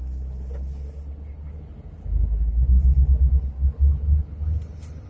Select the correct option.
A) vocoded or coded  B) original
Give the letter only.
B